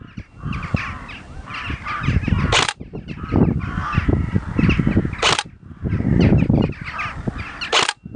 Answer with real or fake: real